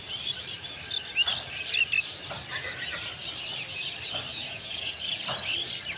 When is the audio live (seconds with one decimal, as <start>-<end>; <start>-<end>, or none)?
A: 0.0-4.3; 5.0-6.0